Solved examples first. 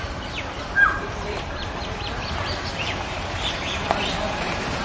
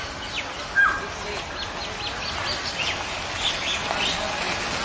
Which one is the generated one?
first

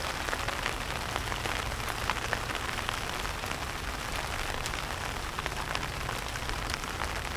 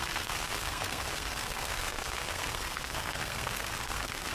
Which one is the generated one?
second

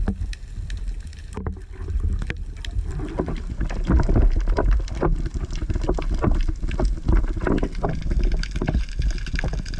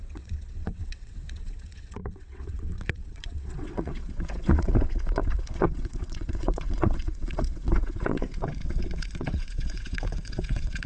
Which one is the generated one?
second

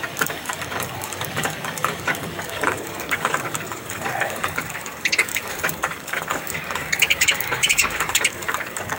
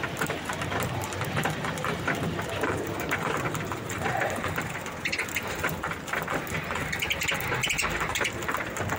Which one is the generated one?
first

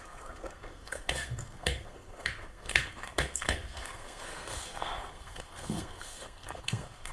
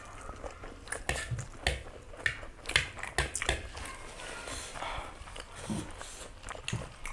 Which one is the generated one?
first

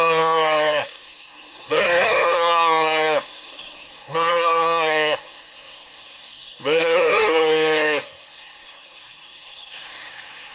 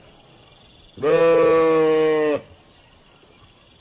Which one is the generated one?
first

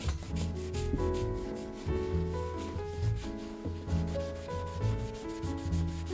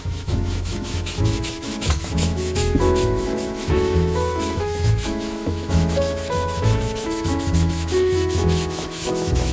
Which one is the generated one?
second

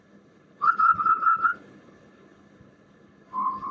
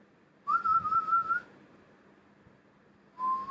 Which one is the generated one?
first